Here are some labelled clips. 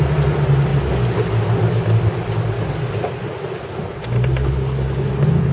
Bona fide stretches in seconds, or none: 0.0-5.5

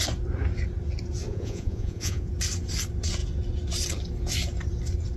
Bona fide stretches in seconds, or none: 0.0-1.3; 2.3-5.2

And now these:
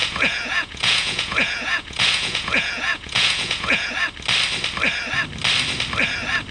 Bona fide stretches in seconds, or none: 3.9-6.5